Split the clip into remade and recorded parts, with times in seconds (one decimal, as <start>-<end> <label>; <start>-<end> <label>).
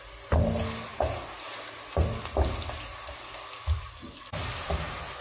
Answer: 0.0-5.2 recorded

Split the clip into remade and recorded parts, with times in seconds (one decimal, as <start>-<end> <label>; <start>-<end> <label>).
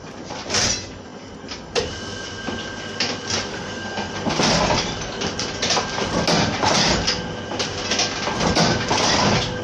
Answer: 0.0-3.5 recorded; 3.5-4.1 remade; 4.1-9.6 recorded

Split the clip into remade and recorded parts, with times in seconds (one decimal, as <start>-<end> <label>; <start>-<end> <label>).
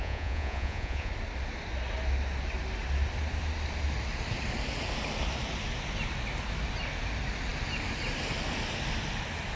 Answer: 0.0-1.1 remade; 1.1-9.6 recorded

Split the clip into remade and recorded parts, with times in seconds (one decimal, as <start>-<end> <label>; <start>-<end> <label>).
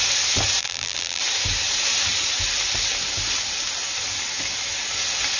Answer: 0.0-0.6 recorded; 0.6-1.2 remade; 1.2-5.4 recorded